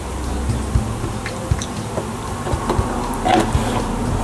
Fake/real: real